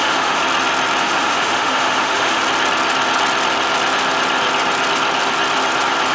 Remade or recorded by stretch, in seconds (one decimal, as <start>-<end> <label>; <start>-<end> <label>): 0.0-0.4 remade; 0.4-1.0 recorded; 1.0-2.4 remade; 2.4-6.1 recorded